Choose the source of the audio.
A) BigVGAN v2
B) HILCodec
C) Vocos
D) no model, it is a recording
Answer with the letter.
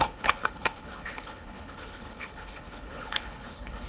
B